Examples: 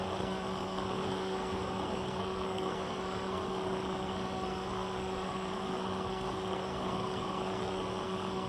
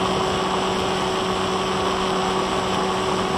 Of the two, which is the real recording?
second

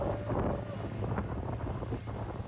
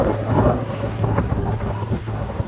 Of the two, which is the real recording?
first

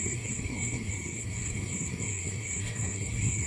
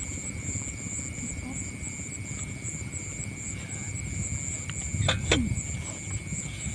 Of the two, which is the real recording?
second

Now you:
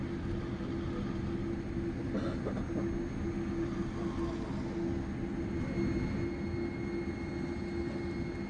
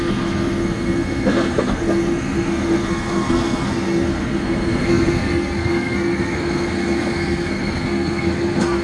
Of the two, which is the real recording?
first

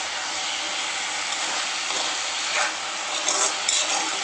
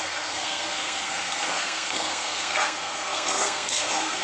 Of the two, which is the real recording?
first